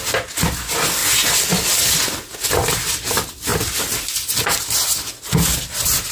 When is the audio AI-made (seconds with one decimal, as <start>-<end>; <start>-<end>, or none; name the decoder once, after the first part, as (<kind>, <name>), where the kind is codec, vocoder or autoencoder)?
none